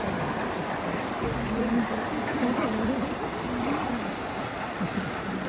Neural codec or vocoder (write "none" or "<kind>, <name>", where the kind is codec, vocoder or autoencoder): none